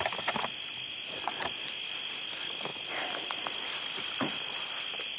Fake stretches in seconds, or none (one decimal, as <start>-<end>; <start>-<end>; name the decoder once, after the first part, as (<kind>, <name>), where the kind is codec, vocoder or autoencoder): none